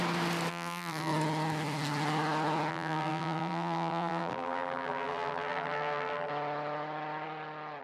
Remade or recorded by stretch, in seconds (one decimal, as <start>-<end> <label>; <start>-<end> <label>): 0.0-0.5 recorded; 0.5-1.1 remade; 1.1-2.7 recorded; 2.7-6.3 remade; 6.3-7.8 recorded